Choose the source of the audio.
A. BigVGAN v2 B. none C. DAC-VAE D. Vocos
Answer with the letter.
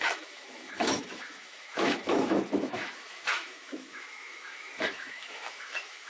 C